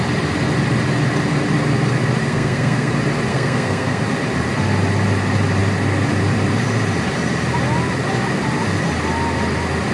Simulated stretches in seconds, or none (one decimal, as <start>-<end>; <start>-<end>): 2.2-2.9; 3.3-4.0